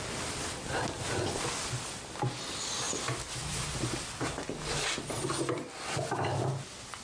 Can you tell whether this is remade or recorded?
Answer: recorded